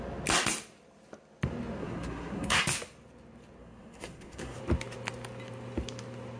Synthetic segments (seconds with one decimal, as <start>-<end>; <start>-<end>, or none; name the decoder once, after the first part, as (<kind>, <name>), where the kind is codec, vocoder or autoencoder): 1.8-2.6 (codec, SNAC); 3.6-4.6